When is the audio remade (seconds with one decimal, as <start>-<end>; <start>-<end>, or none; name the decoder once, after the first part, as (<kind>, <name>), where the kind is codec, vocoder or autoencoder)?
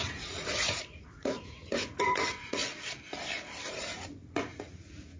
0.0-2.6 (vocoder, Vocos); 3.7-5.2